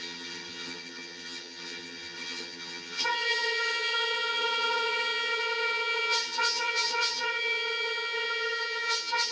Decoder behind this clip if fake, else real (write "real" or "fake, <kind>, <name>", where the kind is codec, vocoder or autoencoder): fake, vocoder, HiFi-GAN